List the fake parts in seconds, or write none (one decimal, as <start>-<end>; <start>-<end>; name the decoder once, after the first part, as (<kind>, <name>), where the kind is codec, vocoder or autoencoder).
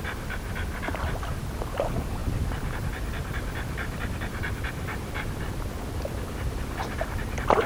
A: none